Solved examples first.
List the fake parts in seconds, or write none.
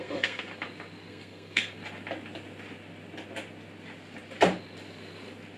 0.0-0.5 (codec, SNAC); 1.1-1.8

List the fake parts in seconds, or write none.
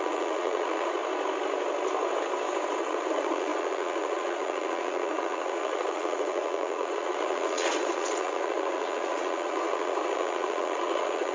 0.0-1.0 (vocoder, Vocos); 2.8-11.3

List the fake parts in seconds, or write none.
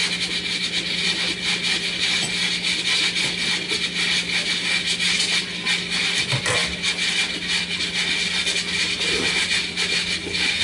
none